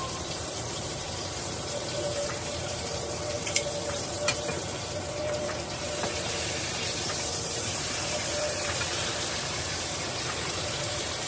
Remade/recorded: remade